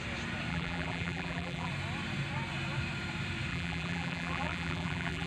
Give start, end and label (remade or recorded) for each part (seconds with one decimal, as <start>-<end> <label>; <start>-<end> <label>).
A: 0.0-0.5 recorded; 0.5-1.7 remade; 1.7-3.5 recorded; 3.5-5.3 remade